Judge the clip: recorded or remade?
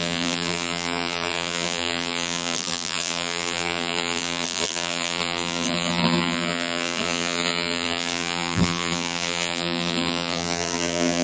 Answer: remade